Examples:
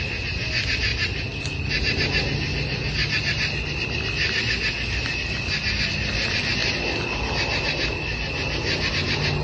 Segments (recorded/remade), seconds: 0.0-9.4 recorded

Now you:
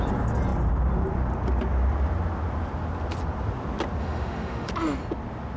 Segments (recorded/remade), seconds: 0.0-4.0 recorded; 4.0-4.7 remade; 4.7-5.6 recorded